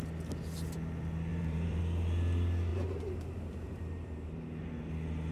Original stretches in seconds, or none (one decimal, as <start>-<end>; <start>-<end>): 0.0-1.3; 1.8-2.7; 4.6-5.3